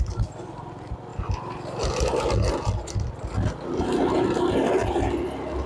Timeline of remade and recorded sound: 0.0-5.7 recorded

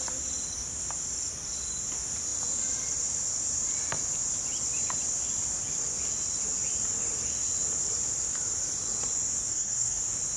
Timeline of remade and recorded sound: 0.0-9.5 recorded; 9.5-10.0 remade; 10.0-10.4 recorded

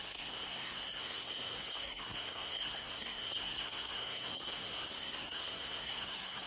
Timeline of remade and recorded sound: 0.0-6.5 remade

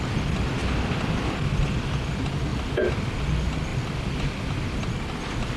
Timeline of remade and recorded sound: 0.0-5.6 recorded

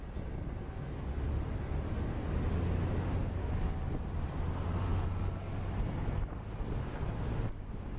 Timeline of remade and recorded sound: 0.0-8.0 recorded

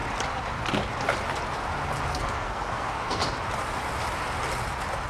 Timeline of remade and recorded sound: 0.0-2.1 recorded; 2.1-3.2 remade; 3.2-5.1 recorded

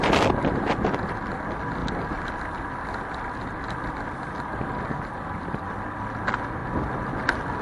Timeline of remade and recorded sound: 0.0-7.6 recorded

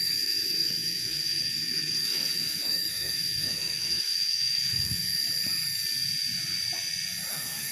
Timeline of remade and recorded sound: 0.0-5.2 remade; 5.2-7.3 recorded; 7.3-7.7 remade